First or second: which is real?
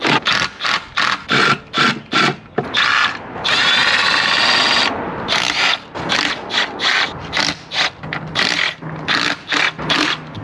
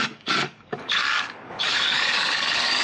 first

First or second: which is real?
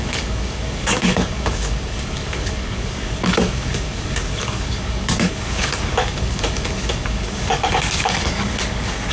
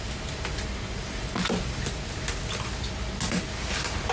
second